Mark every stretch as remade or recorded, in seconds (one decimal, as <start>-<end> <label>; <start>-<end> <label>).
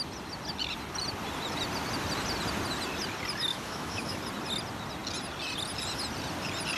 0.0-3.5 recorded; 3.5-4.2 remade; 4.2-6.8 recorded